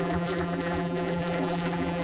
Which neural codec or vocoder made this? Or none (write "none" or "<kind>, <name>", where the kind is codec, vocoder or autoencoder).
vocoder, BigVGAN v2